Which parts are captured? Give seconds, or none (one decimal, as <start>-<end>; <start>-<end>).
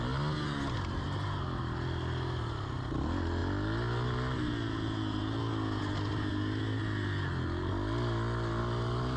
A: 0.0-9.2